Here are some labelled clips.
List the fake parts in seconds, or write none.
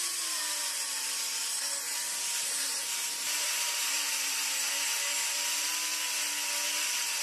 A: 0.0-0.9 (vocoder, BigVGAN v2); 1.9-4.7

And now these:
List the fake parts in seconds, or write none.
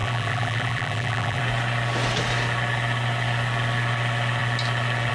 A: 0.0-1.4 (vocoder, BigVGAN v2)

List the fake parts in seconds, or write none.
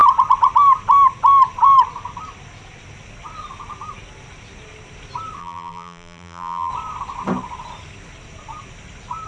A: 5.4-6.7 (vocoder, BigVGAN v2)